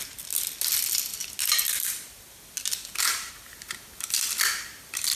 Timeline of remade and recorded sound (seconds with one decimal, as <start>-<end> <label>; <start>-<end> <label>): 0.0-5.2 recorded